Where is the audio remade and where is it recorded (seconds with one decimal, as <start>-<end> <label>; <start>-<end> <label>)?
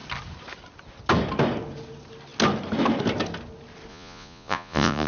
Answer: 0.0-3.9 recorded; 3.9-5.1 remade